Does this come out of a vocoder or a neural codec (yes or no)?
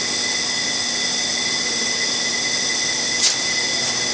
no